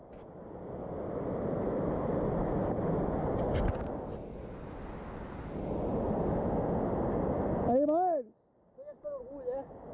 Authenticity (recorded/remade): recorded